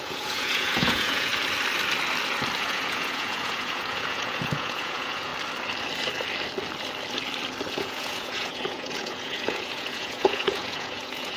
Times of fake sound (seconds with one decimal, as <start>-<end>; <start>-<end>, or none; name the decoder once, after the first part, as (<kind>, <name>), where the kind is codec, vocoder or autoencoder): 0.0-1.3 (vocoder, Vocos); 2.6-5.3; 7.7-11.4